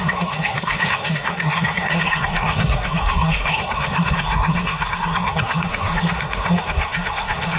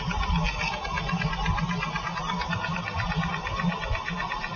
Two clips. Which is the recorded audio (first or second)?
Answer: second